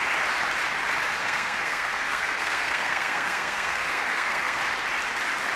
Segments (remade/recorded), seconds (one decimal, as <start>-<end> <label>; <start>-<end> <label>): 0.0-1.2 recorded; 1.2-4.6 remade; 4.6-5.6 recorded